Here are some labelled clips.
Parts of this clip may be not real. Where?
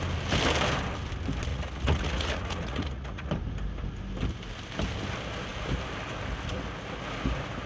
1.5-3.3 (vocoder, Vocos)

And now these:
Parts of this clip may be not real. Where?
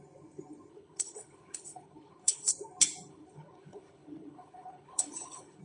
0.7-2.5 (codec, HILCodec); 3.1-5.6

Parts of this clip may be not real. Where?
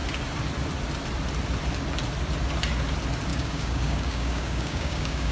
3.3-5.3 (codec, DAC)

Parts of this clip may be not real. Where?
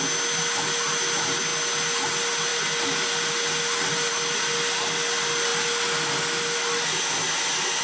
none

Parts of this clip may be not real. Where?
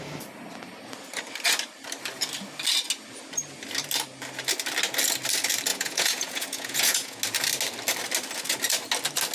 5.7-7.2 (vocoder, Vocos)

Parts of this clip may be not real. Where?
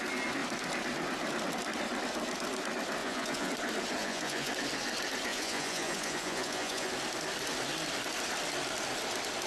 3.0-3.5 (vocoder, Vocos); 4.0-4.5; 5.3-6.9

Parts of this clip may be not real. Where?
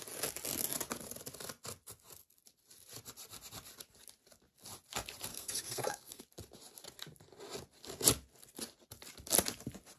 5.3-6.2 (codec, SNAC)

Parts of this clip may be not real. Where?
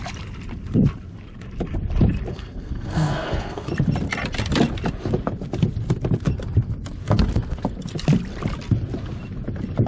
2.3-3.7 (codec, SNAC)